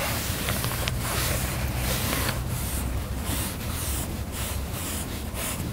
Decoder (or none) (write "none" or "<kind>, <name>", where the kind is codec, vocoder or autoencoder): vocoder, BigVGAN v2